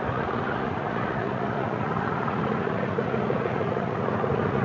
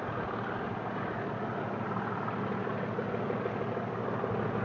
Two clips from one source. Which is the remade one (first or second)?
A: first